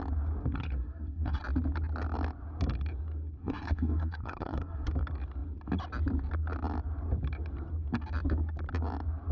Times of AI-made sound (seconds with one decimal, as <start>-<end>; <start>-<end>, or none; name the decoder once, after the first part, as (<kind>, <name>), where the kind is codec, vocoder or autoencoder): 0.4-1.4 (codec, SNAC); 3.4-4.9